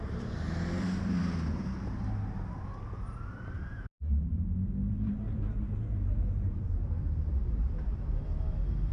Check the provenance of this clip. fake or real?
fake